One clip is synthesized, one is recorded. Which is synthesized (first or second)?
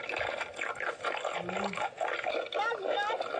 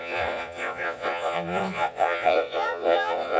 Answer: second